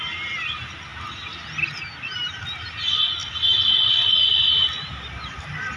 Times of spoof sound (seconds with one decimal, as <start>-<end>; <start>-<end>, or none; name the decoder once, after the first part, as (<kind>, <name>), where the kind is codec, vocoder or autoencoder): 3.6-4.1 (vocoder, Vocos)